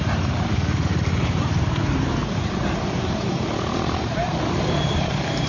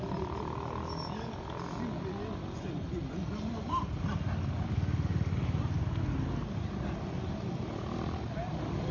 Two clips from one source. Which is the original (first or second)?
second